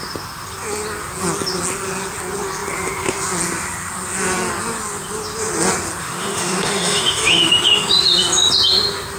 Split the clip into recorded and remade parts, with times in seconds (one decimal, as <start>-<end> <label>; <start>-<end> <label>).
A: 0.0-6.0 recorded; 6.0-7.9 remade; 7.9-9.2 recorded